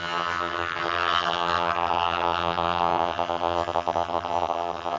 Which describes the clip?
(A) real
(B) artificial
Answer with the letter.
B